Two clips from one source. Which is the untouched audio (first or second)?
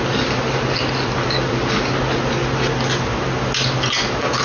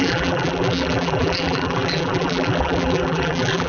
first